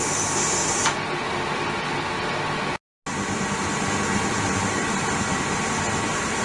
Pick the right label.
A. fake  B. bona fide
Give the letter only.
B